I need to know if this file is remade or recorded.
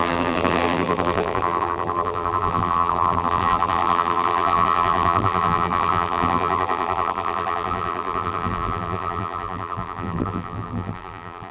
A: remade